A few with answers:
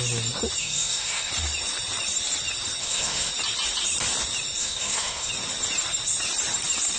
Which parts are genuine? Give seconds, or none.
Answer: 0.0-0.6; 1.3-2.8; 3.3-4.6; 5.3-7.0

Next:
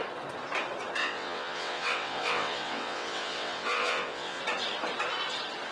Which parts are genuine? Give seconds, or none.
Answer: 0.0-1.0; 4.4-5.7

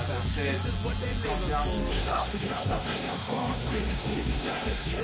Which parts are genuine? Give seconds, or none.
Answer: 0.0-1.9

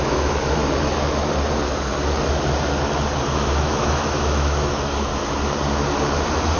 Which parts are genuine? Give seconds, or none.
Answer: 0.6-3.6; 5.1-6.6

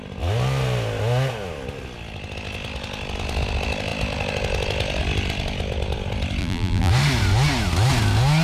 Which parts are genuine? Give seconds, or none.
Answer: 0.0-6.4; 6.9-8.4

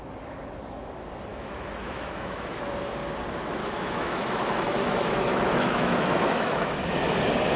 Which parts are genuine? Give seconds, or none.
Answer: 0.0-1.3; 2.6-3.6; 6.8-7.6

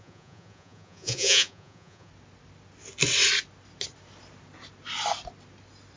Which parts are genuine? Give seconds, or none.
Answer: 2.1-6.0

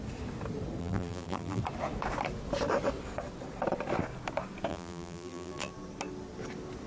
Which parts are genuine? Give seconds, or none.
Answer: 0.0-0.8; 1.6-4.7; 5.7-6.9